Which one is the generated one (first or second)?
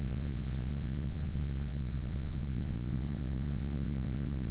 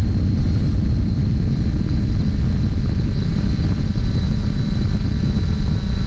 first